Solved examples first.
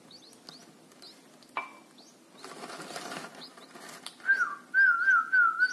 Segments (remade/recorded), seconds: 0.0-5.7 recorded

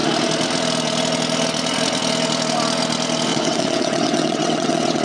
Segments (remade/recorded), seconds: 0.0-3.3 recorded; 3.3-5.0 remade

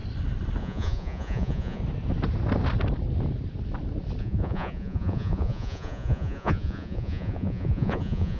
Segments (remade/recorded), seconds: 0.0-0.6 recorded; 0.6-1.8 remade; 1.8-4.2 recorded; 4.2-8.4 remade

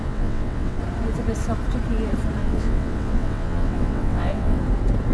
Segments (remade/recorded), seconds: 0.0-0.8 remade; 0.8-2.4 recorded; 2.4-4.6 remade; 4.6-5.1 recorded

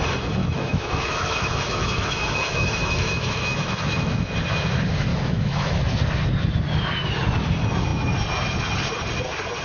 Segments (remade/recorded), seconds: 0.0-0.4 recorded; 0.4-4.2 remade; 4.2-5.1 recorded; 5.1-5.8 remade; 5.8-9.6 recorded

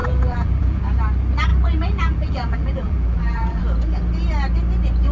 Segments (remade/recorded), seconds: 0.0-0.8 remade; 0.8-1.5 recorded; 1.5-3.6 remade; 3.6-5.1 recorded

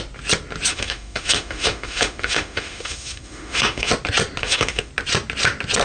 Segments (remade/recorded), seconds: 0.0-0.7 recorded; 0.7-3.9 remade; 3.9-4.4 recorded; 4.4-4.9 remade; 4.9-5.8 recorded